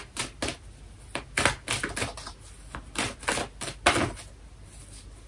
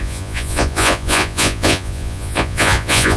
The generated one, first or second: second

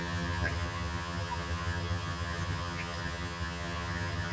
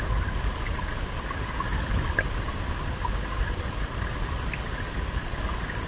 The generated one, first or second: first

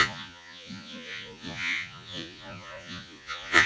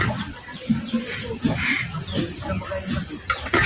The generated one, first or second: first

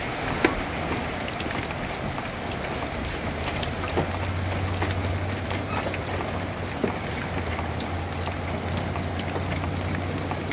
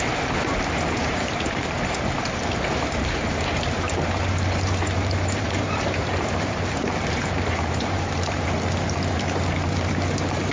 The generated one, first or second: second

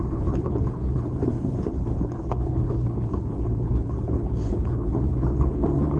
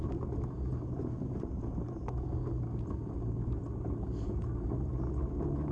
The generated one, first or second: first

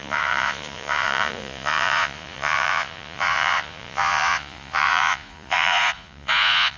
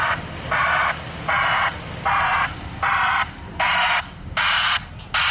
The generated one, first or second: first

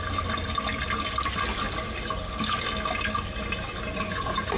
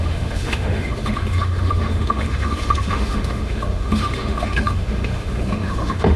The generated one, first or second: second